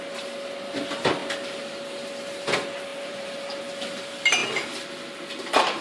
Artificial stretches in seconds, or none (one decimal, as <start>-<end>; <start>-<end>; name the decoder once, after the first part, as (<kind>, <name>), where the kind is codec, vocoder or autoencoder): 2.9-3.6 (vocoder, BigVGAN v2)